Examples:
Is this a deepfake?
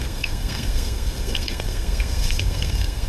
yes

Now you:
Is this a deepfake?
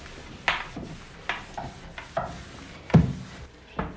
no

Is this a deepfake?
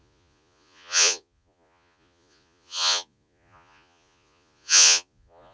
yes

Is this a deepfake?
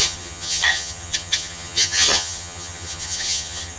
yes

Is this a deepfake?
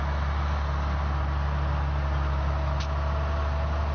no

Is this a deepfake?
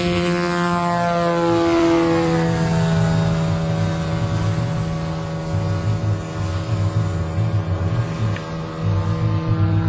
no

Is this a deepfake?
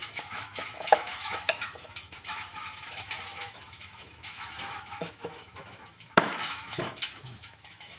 yes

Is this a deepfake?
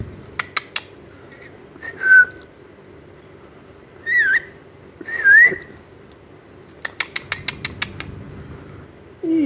no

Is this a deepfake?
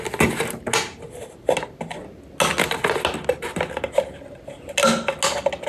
no